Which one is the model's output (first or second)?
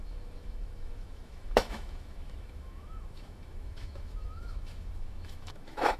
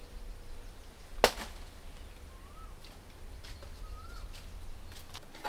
first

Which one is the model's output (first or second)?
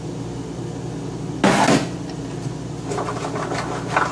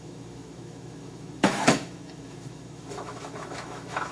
second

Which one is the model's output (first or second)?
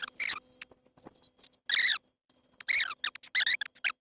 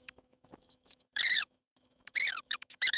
second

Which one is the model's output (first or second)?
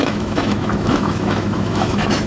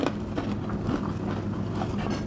first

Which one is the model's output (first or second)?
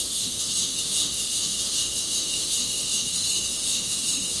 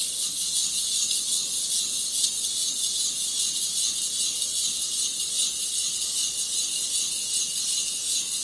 first